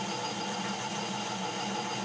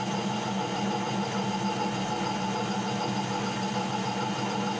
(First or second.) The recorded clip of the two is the second